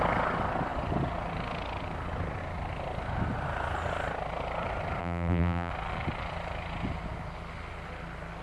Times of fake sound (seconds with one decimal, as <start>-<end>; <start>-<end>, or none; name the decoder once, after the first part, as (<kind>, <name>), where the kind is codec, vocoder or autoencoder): 5.0-5.7 (vocoder, BigVGAN v2)